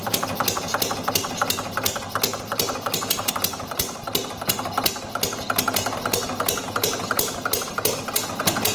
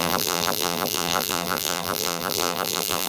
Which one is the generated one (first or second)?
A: second